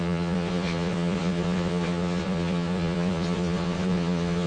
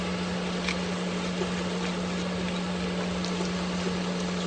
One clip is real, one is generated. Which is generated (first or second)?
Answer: first